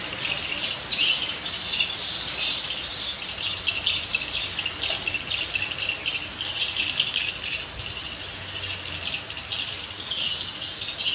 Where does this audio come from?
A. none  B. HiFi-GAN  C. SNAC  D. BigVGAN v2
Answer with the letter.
A